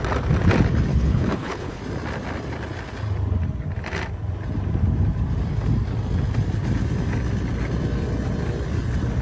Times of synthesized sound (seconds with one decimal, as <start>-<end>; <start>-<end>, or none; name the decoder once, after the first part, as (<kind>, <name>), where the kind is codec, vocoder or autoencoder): 0.9-1.8 (codec, HILCodec)